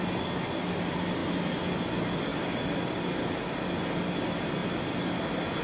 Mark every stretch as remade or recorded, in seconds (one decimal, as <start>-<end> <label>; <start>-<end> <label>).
0.0-1.2 recorded; 1.2-1.8 remade; 1.8-5.6 recorded